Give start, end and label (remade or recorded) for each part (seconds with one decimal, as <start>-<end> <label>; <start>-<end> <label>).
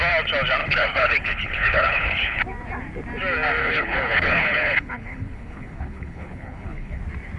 0.0-0.6 recorded; 0.6-2.4 remade; 2.4-3.6 recorded; 3.6-7.0 remade; 7.0-7.4 recorded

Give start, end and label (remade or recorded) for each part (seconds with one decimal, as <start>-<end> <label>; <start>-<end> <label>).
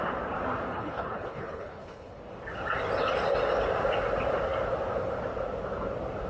0.0-0.7 recorded; 0.7-2.2 remade; 2.2-6.3 recorded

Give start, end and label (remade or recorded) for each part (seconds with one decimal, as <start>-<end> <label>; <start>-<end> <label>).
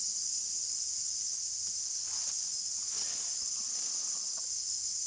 0.0-5.1 recorded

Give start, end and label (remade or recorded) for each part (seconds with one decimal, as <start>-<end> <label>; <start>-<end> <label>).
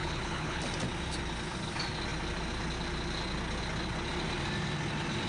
0.0-0.6 remade; 0.6-5.3 recorded